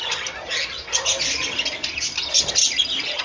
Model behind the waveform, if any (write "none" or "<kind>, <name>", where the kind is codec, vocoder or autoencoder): none